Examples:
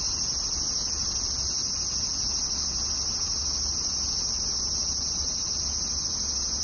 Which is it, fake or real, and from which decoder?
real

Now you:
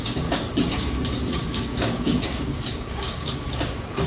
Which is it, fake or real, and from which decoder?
fake, codec, DAC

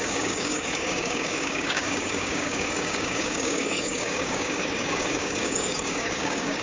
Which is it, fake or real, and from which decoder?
fake, codec, DAC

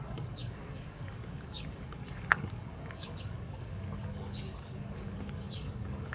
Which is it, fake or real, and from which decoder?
fake, codec, DAC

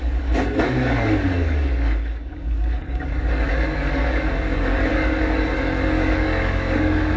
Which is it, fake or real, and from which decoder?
fake, codec, DAC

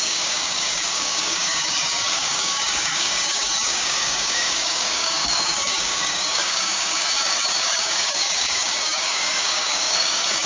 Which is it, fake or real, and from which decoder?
fake, codec, DAC